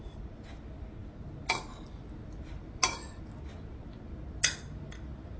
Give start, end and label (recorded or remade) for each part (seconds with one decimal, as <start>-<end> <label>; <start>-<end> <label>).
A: 0.0-5.4 recorded